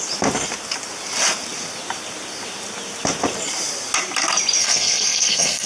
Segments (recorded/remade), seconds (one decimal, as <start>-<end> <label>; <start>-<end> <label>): 0.0-4.6 recorded; 4.6-5.7 remade